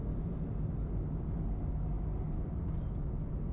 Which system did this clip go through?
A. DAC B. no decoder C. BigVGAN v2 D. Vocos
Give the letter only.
B